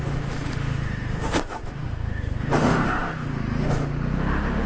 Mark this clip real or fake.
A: fake